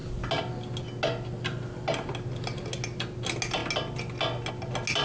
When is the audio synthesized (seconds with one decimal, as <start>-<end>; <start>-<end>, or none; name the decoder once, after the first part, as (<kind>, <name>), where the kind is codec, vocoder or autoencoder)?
none